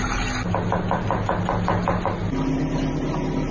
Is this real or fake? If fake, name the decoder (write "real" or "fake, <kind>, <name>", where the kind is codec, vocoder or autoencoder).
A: real